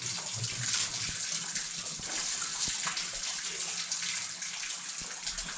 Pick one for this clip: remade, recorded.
recorded